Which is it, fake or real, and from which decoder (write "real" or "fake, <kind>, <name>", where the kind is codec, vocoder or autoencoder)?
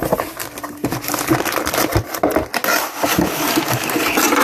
real